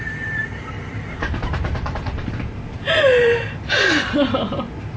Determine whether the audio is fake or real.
fake